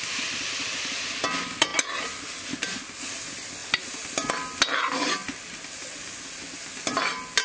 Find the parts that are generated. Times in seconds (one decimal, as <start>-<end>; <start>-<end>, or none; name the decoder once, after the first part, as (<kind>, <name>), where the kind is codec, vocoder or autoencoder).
3.6-4.3 (vocoder, BigVGAN v2)